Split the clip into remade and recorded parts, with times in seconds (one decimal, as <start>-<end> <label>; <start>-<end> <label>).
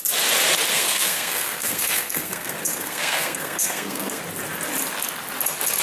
0.0-0.7 recorded; 0.7-4.2 remade; 4.2-5.8 recorded